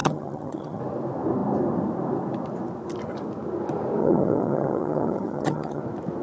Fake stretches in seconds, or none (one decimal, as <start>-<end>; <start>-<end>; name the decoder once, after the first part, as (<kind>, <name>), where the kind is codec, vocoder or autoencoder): 0.0-0.8 (vocoder, HiFi-GAN); 4.0-5.8